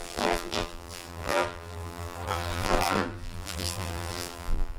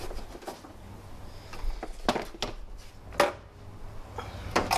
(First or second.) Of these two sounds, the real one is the second